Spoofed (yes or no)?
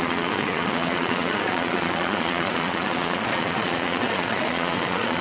yes